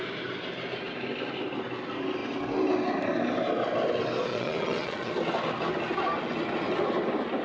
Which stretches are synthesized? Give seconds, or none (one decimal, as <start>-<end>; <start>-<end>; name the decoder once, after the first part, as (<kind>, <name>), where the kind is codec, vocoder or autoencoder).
4.3-5.1 (vocoder, Vocos)